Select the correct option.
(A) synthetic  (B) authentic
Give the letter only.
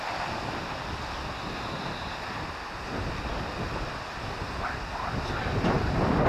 B